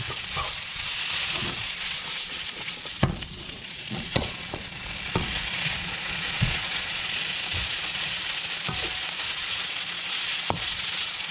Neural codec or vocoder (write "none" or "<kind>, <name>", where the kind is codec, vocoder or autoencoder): vocoder, Vocos